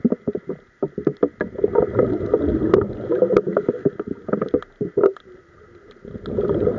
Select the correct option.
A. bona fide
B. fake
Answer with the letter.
A